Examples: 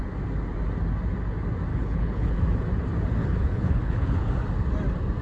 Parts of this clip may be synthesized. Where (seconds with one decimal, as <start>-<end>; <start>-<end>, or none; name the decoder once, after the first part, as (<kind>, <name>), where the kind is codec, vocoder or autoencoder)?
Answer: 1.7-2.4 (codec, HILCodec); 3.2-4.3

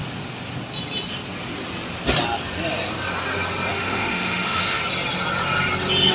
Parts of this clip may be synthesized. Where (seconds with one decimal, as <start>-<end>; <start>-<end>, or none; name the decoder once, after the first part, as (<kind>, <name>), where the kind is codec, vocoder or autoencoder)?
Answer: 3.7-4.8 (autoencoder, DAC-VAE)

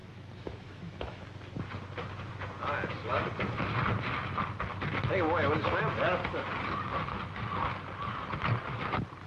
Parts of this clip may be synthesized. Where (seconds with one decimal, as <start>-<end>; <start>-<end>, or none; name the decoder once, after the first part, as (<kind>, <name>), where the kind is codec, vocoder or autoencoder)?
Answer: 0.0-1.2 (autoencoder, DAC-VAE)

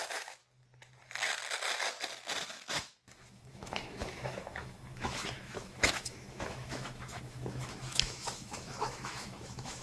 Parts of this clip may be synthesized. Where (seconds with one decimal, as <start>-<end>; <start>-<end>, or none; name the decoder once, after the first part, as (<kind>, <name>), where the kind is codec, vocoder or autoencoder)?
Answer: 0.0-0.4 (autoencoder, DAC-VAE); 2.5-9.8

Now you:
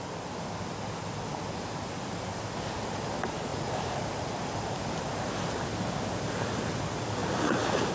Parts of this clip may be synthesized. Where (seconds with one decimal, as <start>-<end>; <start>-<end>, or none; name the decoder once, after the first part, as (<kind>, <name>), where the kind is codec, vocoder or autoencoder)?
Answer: 3.5-4.0 (vocoder, Vocos); 7.2-7.9